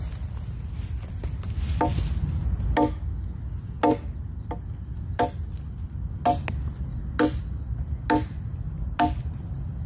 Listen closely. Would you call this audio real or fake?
real